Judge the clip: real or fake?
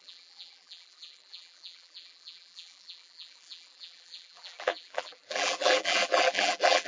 fake